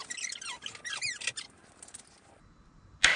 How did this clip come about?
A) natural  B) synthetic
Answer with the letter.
A